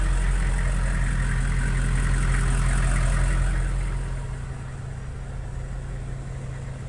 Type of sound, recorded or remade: recorded